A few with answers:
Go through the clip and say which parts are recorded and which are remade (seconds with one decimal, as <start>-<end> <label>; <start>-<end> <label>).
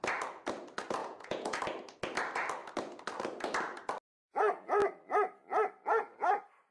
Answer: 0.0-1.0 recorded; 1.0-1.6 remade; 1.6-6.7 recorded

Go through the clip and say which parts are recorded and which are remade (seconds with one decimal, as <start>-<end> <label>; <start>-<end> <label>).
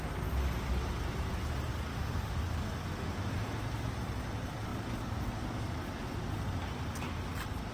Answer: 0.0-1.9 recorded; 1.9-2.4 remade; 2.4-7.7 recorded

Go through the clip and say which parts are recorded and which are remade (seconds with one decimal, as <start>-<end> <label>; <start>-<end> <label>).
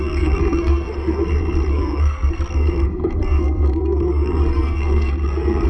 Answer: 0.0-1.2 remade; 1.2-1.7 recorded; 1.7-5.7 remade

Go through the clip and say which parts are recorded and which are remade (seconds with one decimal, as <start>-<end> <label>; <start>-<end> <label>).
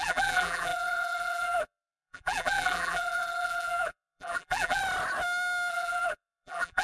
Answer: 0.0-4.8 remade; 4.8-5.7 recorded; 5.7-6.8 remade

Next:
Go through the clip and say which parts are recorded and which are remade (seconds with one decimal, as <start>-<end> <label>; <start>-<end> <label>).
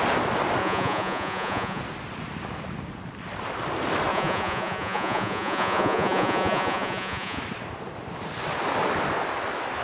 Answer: 0.0-0.6 recorded; 0.6-1.8 remade; 1.8-4.1 recorded; 4.1-7.4 remade; 7.4-9.8 recorded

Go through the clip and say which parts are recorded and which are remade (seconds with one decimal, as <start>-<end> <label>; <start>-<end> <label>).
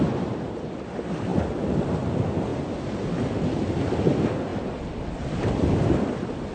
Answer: 0.0-6.5 recorded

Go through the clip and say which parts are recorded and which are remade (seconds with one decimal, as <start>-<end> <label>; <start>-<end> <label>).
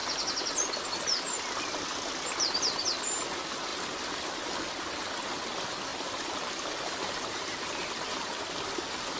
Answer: 0.0-5.9 recorded; 5.9-8.4 remade; 8.4-9.2 recorded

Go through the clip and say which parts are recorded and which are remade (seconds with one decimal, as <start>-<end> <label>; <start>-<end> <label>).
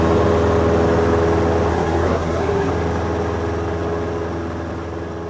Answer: 0.0-1.7 recorded; 1.7-2.7 remade; 2.7-5.3 recorded